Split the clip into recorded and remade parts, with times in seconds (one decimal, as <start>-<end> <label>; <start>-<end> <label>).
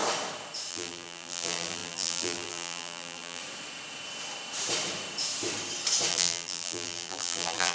0.0-0.7 recorded; 0.7-3.4 remade; 3.4-6.1 recorded; 6.1-7.7 remade